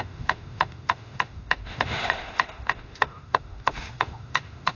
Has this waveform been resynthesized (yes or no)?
yes